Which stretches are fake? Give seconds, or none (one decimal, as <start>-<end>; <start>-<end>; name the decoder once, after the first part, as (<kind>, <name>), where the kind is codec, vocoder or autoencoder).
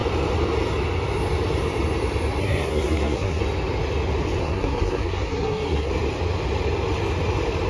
2.4-3.4 (codec, SNAC); 4.4-5.9